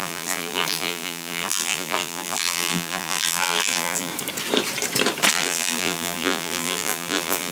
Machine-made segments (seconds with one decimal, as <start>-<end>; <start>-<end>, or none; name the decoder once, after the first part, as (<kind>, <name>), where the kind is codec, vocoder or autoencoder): 0.0-4.1 (vocoder, BigVGAN v2); 5.3-7.5